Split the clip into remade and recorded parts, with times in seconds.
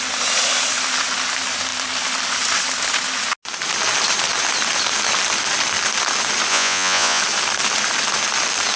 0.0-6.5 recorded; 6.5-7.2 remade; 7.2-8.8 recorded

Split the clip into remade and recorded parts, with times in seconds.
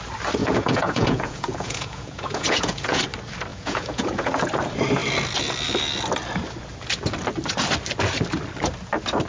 0.0-0.4 recorded; 0.4-3.0 remade; 3.0-3.5 recorded; 3.5-4.4 remade; 4.4-9.3 recorded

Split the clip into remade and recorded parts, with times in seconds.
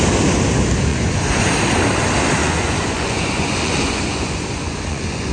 0.0-0.9 recorded; 0.9-1.5 remade; 1.5-2.4 recorded; 2.4-5.3 remade